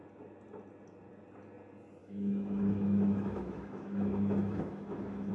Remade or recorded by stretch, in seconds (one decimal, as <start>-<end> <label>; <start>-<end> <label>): 0.0-2.0 recorded; 2.0-5.3 remade